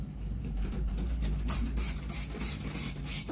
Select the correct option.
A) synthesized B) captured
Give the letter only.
A